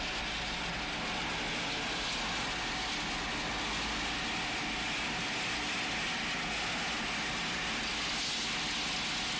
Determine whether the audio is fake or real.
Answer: real